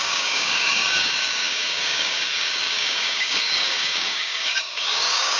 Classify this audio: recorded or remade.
remade